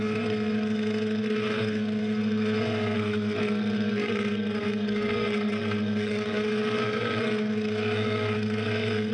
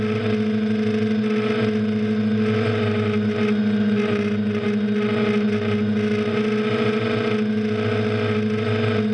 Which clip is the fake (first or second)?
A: first